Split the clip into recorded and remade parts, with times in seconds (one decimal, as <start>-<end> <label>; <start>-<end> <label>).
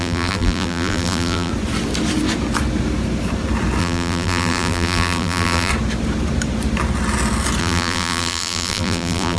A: 0.0-1.5 remade; 1.5-3.8 recorded; 3.8-5.7 remade; 5.7-7.6 recorded; 7.6-9.4 remade